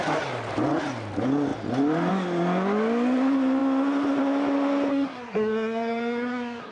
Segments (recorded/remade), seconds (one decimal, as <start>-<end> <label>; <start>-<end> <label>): 0.0-4.9 recorded; 4.9-6.7 remade